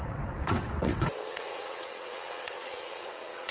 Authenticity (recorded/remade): remade